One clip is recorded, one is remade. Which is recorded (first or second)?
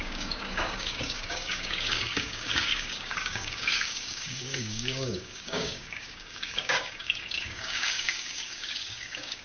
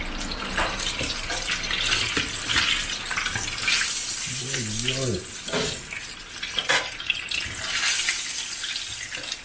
second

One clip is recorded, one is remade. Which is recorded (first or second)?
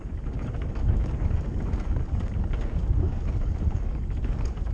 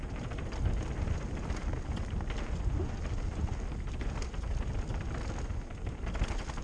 second